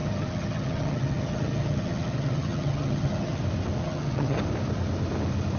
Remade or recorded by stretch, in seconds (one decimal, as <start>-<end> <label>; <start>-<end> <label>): 0.0-3.4 remade; 3.4-3.8 recorded; 3.8-4.4 remade; 4.4-5.6 recorded